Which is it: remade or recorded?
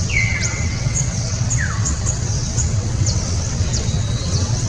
remade